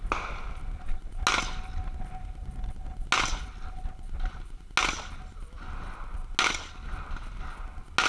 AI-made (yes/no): no